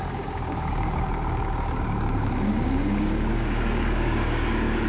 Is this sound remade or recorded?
remade